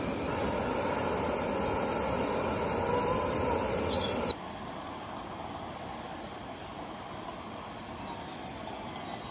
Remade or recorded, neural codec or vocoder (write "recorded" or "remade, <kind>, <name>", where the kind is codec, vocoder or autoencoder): recorded